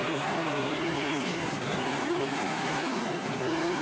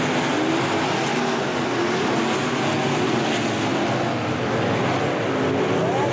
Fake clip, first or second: first